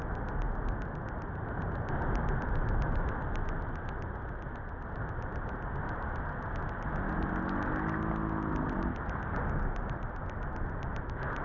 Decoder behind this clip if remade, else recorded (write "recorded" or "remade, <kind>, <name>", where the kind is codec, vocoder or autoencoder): recorded